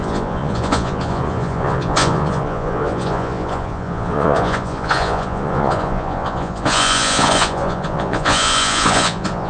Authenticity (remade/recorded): remade